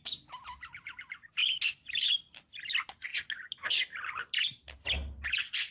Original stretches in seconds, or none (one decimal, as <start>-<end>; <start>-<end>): 0.0-5.7